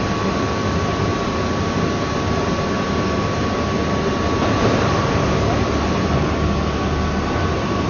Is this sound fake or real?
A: real